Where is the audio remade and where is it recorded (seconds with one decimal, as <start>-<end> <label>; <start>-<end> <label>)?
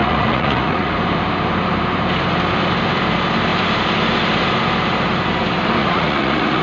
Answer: 0.0-0.9 remade; 0.9-5.8 recorded; 5.8-6.6 remade